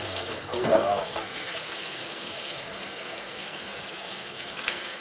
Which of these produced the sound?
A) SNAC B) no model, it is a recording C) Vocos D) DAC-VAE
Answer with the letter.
A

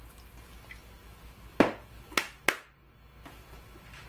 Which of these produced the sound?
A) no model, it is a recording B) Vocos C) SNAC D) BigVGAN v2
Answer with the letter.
A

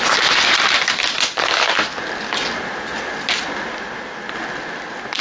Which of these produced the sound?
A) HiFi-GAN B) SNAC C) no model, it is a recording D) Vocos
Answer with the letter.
C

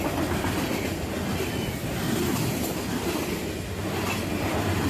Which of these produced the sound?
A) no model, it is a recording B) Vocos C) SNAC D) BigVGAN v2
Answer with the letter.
A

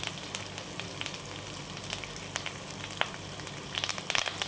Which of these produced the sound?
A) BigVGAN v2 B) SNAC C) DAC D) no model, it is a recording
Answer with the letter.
D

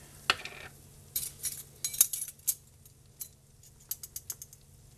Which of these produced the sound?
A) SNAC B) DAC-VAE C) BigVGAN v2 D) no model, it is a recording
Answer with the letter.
D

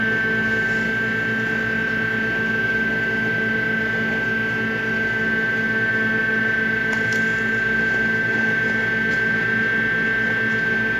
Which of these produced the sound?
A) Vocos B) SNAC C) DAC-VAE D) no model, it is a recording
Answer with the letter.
D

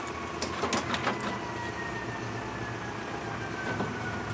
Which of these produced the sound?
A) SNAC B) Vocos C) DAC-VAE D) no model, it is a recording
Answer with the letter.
D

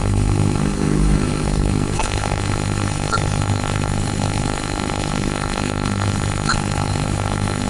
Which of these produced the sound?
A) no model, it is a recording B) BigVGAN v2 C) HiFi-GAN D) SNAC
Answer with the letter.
D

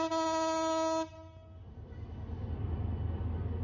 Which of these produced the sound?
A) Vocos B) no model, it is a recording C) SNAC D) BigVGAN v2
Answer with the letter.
B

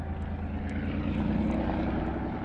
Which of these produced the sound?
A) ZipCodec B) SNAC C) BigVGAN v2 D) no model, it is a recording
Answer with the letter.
D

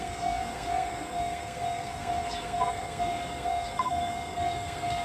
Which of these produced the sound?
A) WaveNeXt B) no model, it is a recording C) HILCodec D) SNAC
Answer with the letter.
D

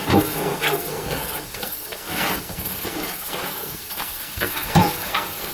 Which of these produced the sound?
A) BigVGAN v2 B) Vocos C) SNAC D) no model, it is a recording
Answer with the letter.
C